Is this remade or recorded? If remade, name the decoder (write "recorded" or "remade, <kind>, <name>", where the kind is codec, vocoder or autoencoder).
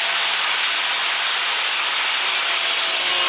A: recorded